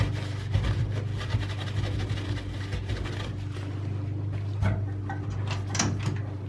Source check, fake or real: real